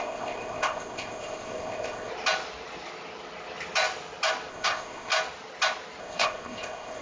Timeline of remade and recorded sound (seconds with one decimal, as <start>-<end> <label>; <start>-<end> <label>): 0.0-2.1 remade; 2.1-4.5 recorded; 4.5-5.1 remade; 5.1-6.0 recorded; 6.0-7.0 remade